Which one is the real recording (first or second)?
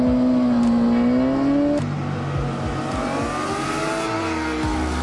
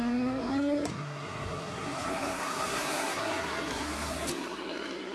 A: first